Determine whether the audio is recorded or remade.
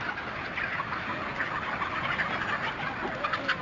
recorded